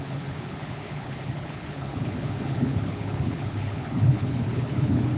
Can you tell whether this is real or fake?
fake